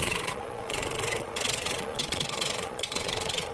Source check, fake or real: fake